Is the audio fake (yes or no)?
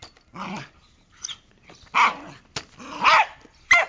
no